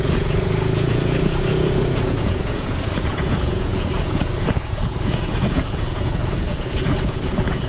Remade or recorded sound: remade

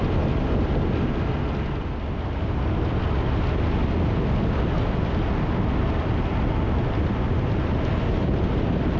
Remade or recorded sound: recorded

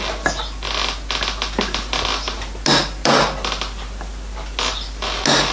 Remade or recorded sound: recorded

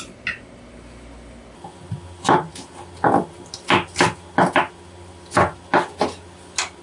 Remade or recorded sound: recorded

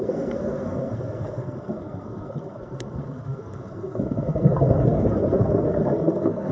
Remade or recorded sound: remade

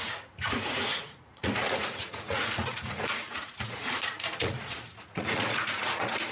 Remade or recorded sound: remade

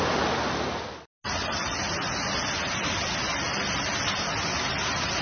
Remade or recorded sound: recorded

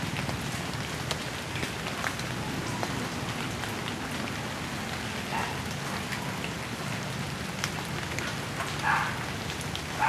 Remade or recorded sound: recorded